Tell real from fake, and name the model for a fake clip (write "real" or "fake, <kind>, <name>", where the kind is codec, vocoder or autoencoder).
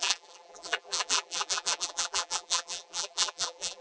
fake, vocoder, BigVGAN v2